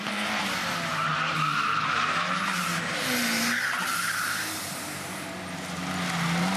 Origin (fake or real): real